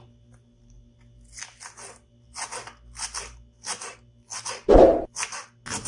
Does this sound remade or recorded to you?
recorded